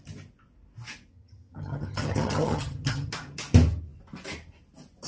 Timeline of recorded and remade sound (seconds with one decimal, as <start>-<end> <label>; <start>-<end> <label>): 0.0-1.1 recorded; 1.1-3.1 remade; 3.1-5.1 recorded